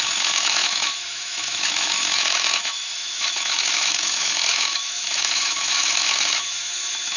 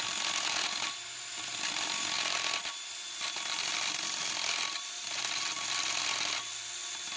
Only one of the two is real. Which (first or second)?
second